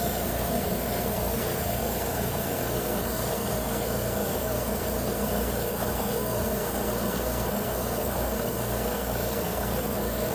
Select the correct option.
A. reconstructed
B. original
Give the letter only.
A